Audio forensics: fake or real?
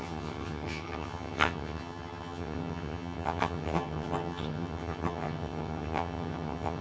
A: fake